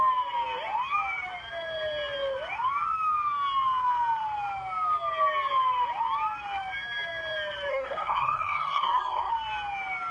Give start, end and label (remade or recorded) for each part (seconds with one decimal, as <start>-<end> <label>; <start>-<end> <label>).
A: 0.0-7.7 recorded; 7.7-9.3 remade; 9.3-10.1 recorded